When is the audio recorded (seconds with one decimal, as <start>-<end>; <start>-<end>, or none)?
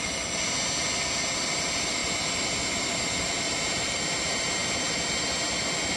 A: 0.0-6.0